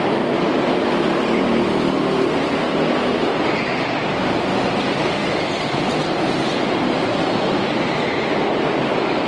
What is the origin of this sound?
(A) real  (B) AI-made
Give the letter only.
A